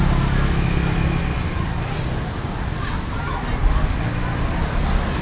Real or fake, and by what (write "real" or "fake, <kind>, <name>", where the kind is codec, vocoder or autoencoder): real